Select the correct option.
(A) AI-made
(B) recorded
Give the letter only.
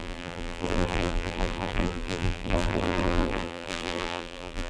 A